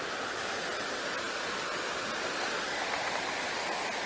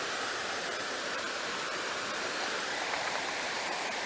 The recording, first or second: first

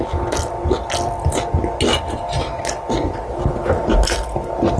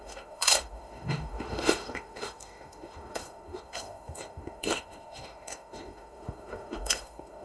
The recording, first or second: first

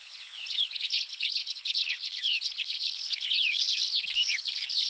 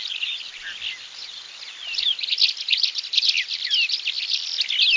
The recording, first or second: second